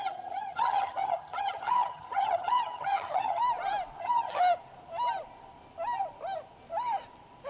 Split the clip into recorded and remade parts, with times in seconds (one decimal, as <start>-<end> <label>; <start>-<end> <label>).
0.0-3.4 remade; 3.4-4.0 recorded; 4.0-4.4 remade; 4.4-7.5 recorded